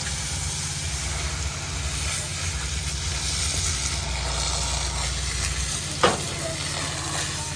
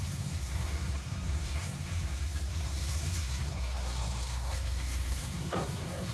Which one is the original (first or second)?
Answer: first